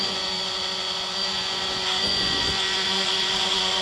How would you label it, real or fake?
fake